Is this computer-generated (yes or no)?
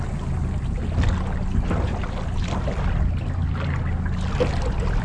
no